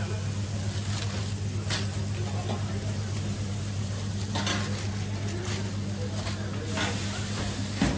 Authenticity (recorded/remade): recorded